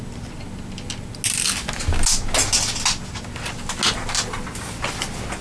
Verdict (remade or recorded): recorded